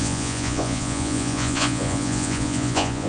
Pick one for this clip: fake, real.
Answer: fake